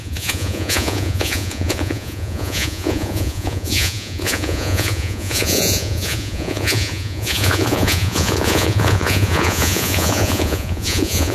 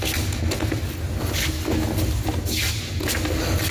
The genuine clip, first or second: second